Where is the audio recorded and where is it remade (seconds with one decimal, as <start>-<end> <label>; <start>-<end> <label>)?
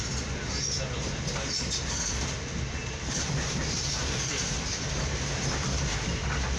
0.0-2.8 recorded; 2.8-4.9 remade; 4.9-6.6 recorded